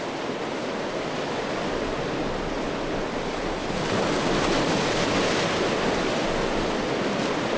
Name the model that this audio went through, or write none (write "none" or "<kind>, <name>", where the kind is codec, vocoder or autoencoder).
none